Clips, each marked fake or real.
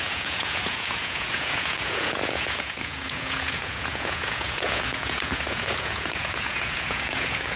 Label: fake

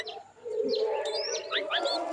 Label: real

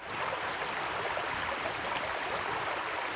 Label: real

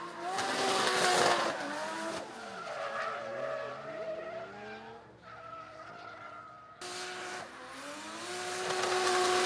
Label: real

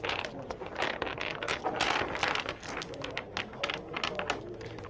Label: real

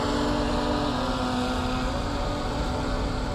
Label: real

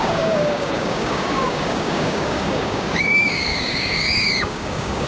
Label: fake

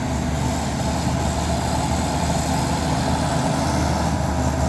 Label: real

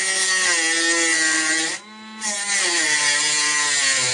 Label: real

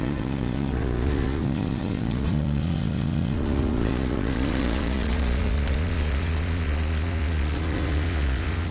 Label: fake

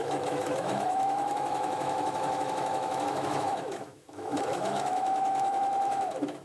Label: fake